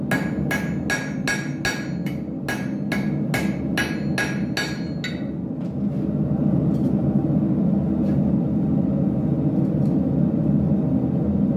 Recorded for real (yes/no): yes